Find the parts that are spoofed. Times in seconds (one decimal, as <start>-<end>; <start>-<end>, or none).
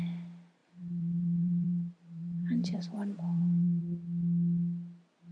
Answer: 0.6-3.8